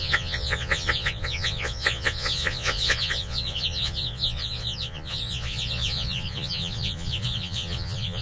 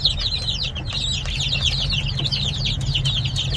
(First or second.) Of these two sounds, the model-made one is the first